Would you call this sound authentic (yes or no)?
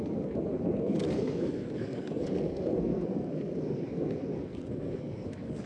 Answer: no